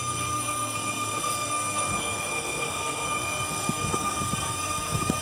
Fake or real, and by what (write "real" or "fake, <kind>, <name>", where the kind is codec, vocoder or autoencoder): fake, codec, SNAC